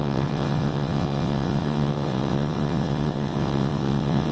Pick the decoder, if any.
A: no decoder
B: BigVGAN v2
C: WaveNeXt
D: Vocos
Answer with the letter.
C